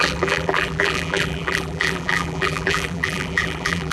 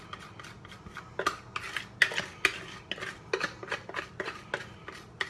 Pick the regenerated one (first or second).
first